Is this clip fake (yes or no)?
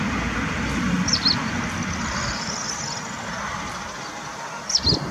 no